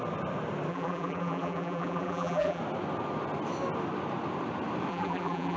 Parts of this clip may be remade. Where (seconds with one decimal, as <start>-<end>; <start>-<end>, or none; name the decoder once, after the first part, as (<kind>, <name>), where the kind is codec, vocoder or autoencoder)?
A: 0.7-2.6 (vocoder, BigVGAN v2); 4.9-5.6